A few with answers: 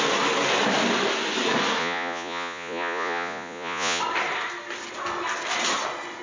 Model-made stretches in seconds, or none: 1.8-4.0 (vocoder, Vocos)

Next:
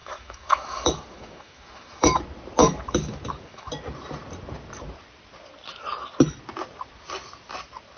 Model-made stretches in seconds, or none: 0.0-2.2 (autoencoder, DAC-VAE); 2.6-3.7

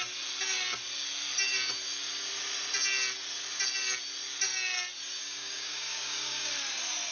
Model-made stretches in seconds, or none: 5.2-6.5 (codec, DAC)

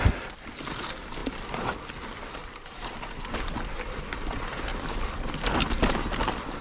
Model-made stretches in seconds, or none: none